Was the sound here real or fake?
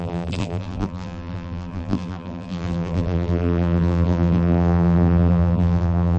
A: fake